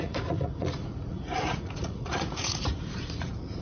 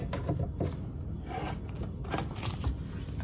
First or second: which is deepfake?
first